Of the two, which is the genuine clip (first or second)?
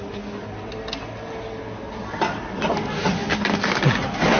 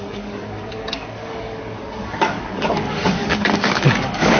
first